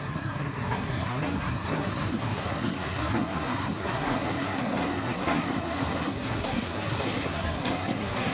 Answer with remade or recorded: remade